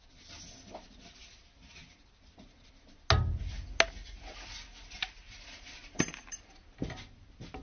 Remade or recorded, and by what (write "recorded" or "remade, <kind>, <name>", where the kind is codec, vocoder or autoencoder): recorded